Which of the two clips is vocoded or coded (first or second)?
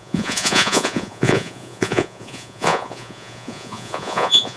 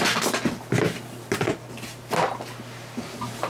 first